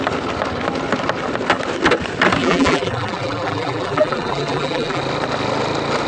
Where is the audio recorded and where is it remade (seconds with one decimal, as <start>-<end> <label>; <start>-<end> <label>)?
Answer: 0.0-2.4 recorded; 2.4-5.0 remade; 5.0-6.1 recorded